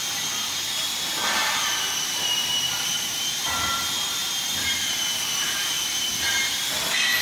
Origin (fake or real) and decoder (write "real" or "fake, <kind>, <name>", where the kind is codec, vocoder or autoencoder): fake, vocoder, BigVGAN v2